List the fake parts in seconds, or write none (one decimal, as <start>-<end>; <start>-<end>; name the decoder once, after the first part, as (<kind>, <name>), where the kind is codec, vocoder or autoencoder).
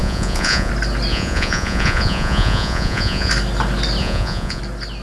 0.0-0.7 (vocoder, Vocos); 1.1-3.3; 4.0-4.6